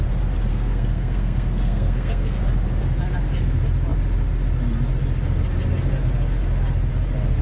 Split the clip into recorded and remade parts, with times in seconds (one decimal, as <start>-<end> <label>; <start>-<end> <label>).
0.0-0.5 recorded; 0.5-2.4 remade; 2.4-7.4 recorded